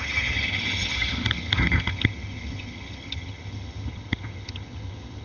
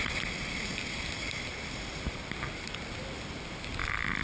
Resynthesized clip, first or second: first